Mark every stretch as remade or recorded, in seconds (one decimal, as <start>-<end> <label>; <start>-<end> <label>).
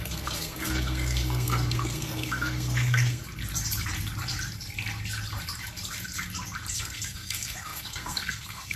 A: 0.0-3.2 remade; 3.2-6.7 recorded; 6.7-8.8 remade